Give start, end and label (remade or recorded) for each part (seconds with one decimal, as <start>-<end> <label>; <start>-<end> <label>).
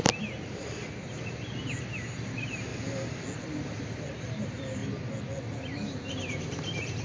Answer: 0.0-2.7 remade; 2.7-3.8 recorded; 3.8-4.8 remade; 4.8-6.0 recorded; 6.0-7.0 remade